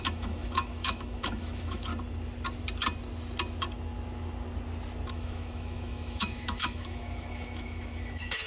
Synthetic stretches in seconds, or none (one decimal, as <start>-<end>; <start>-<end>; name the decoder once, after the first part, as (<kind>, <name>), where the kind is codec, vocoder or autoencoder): 0.0-1.9 (autoencoder, DAC-VAE); 5.1-8.5